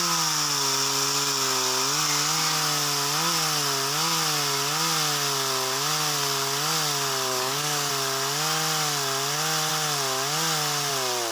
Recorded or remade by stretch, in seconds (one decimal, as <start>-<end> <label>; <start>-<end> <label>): 0.0-7.3 recorded; 7.3-7.9 remade; 7.9-11.3 recorded